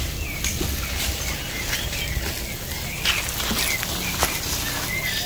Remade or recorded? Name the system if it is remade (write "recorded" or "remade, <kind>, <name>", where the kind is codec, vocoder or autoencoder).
recorded